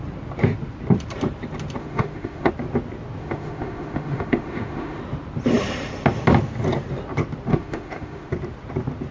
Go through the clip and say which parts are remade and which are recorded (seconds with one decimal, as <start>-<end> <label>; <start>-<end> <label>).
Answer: 0.0-1.8 recorded; 1.8-2.5 remade; 2.5-3.2 recorded; 3.2-5.0 remade; 5.0-7.5 recorded; 7.5-8.3 remade; 8.3-9.1 recorded